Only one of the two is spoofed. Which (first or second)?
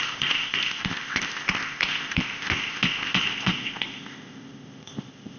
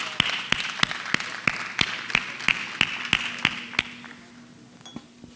first